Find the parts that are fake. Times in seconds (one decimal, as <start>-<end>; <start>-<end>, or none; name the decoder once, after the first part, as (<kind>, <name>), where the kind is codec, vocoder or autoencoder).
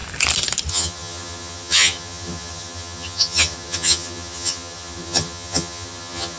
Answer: 0.7-6.4 (vocoder, HiFi-GAN)